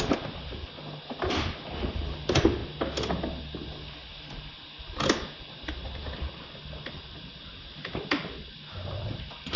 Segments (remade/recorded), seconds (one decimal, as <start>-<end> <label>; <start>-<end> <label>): 0.0-9.6 recorded